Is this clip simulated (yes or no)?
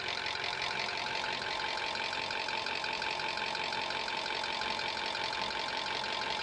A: no